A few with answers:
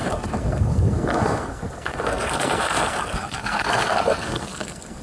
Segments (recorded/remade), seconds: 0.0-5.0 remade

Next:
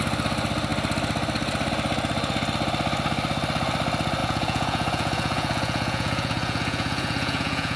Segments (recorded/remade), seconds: 0.0-4.2 recorded; 4.2-7.8 remade

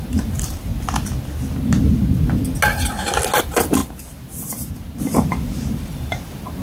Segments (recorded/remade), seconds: 0.0-0.7 remade; 0.7-3.4 recorded; 3.4-6.6 remade

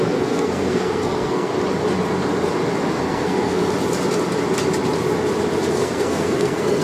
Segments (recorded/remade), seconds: 0.0-1.5 remade; 1.5-2.9 recorded; 2.9-3.6 remade; 3.6-5.7 recorded; 5.7-6.8 remade

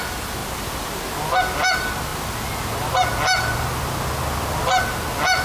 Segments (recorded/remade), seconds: 0.0-5.4 recorded

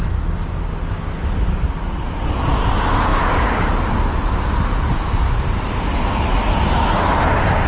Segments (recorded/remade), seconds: 0.0-7.7 recorded

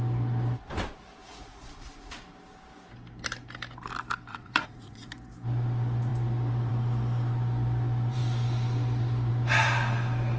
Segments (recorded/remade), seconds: 0.0-1.2 recorded; 1.2-2.1 remade; 2.1-4.3 recorded; 4.3-5.1 remade; 5.1-10.4 recorded

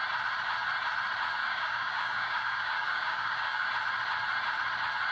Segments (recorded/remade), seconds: 0.0-1.4 recorded; 1.4-3.7 remade; 3.7-5.1 recorded